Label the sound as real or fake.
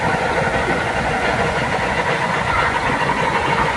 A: fake